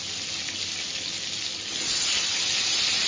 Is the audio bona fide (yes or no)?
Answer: yes